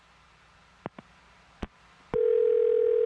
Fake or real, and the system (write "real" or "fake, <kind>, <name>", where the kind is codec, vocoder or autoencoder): real